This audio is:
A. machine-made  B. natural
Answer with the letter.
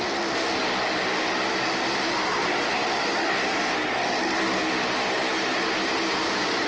B